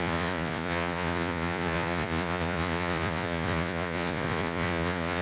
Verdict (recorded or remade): remade